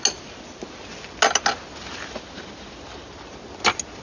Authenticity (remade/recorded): recorded